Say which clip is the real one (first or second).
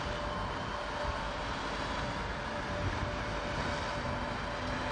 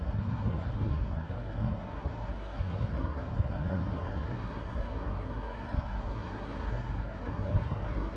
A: first